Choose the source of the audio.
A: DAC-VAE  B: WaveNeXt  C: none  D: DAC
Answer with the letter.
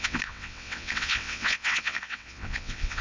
B